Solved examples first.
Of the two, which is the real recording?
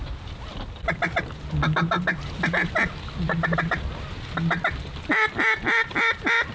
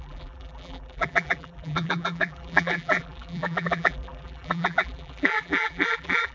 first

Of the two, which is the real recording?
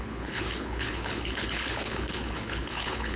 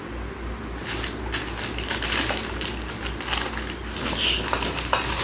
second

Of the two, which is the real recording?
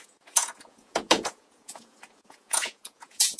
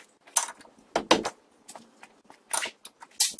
second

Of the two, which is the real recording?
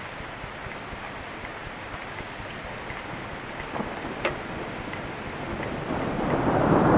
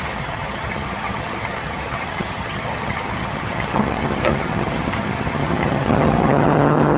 first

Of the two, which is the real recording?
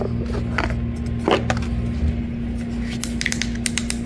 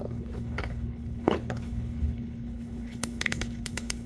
first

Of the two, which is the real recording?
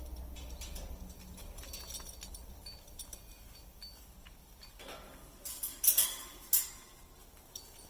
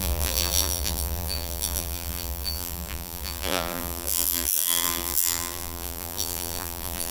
first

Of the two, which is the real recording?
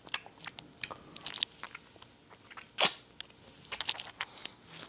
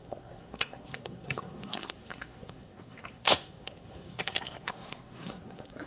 first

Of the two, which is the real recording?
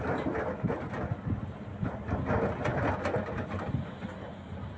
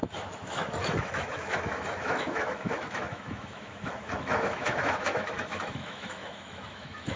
first